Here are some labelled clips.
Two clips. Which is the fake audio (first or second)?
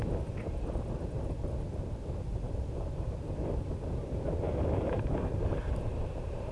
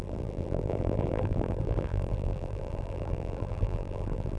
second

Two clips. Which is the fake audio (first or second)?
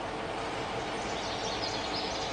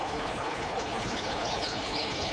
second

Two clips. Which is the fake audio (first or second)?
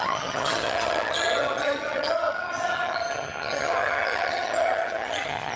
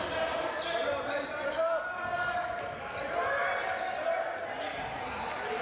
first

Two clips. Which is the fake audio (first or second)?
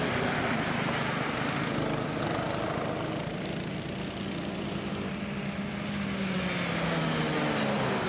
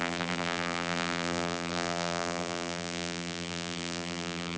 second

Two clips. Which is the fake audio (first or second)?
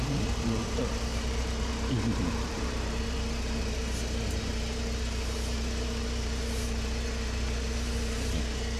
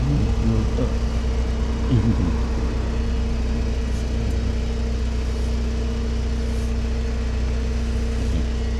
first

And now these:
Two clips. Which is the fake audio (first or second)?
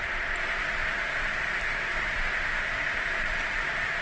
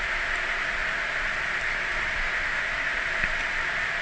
first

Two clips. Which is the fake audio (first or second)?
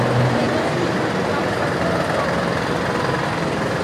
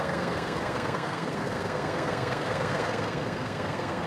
second